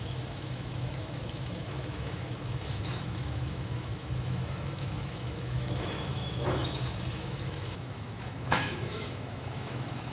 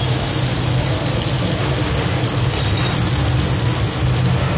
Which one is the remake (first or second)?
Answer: first